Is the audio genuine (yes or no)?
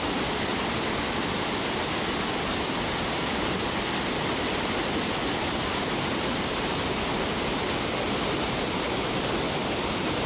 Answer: yes